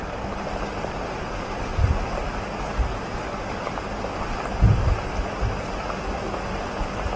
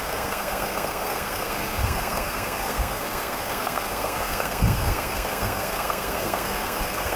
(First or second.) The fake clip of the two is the second